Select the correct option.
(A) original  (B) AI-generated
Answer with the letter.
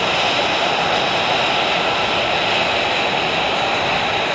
A